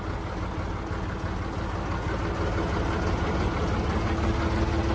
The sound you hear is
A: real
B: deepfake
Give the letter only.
A